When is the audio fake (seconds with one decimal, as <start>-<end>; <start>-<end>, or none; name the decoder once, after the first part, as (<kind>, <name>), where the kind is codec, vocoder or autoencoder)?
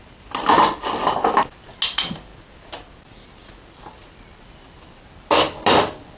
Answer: none